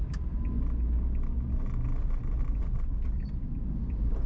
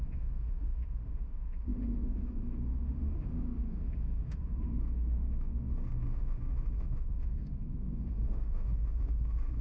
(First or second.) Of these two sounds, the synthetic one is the second